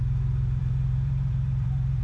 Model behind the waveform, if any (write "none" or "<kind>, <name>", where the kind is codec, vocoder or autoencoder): vocoder, BigVGAN v2